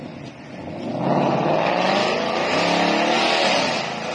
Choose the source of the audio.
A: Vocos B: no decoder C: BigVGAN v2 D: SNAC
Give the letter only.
B